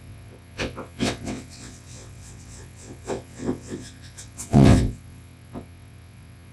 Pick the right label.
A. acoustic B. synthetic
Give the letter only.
B